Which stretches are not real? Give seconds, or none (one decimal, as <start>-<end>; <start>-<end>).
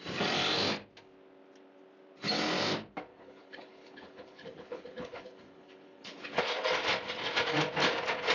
3.1-6.4